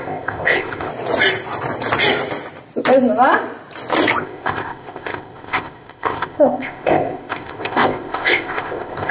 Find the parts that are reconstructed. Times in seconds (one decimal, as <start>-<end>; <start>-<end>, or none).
0.0-0.9; 4.2-9.1